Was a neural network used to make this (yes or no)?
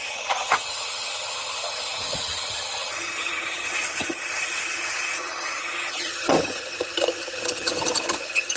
yes